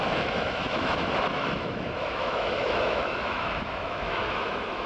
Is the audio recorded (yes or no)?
no